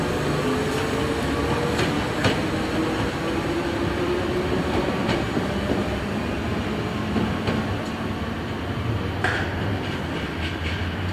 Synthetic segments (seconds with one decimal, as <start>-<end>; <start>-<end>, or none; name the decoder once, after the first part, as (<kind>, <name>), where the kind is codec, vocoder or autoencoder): none